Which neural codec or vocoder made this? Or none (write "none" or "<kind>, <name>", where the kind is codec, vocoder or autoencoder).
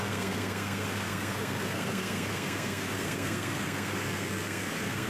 codec, SNAC